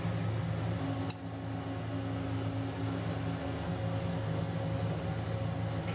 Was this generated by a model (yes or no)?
no